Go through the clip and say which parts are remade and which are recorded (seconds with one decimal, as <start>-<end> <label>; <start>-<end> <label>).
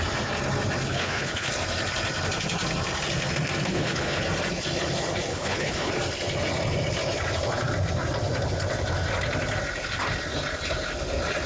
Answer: 0.0-0.9 recorded; 0.9-1.5 remade; 1.5-3.7 recorded; 3.7-4.2 remade; 4.2-5.3 recorded; 5.3-5.9 remade; 5.9-11.5 recorded